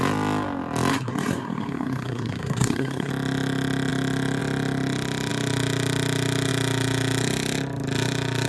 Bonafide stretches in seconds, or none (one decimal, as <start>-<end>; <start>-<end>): 0.0-0.9; 3.1-8.5

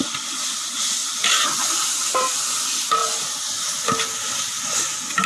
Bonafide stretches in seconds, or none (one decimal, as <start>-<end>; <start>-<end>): 0.0-5.3

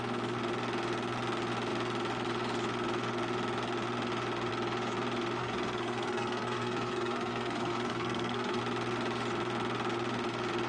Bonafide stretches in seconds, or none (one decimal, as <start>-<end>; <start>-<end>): 0.0-5.4; 8.6-10.7